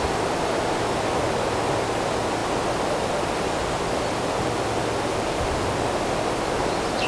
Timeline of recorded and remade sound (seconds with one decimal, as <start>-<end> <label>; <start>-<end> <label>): 0.0-7.1 recorded